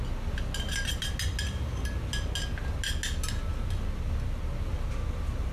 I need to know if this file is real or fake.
real